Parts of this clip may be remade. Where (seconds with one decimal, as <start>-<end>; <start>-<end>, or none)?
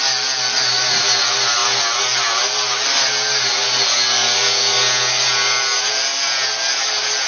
none